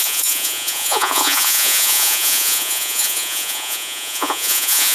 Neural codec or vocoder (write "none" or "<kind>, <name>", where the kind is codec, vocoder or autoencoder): vocoder, Vocos